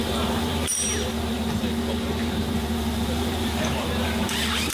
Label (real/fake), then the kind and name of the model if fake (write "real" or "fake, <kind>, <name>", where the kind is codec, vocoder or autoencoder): fake, vocoder, BigVGAN v2